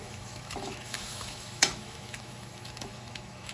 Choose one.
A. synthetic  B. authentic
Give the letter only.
A